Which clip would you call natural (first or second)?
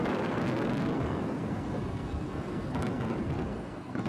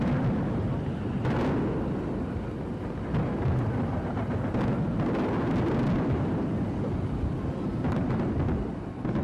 second